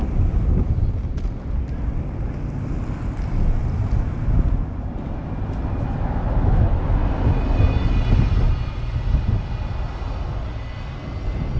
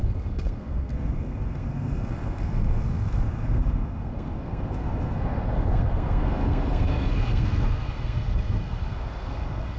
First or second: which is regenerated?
second